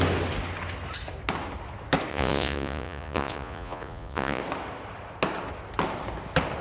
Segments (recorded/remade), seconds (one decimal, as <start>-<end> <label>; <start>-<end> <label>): 0.0-2.1 recorded; 2.1-4.4 remade; 4.4-6.6 recorded